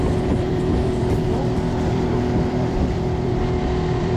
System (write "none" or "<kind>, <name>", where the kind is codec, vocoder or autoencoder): vocoder, BigVGAN v2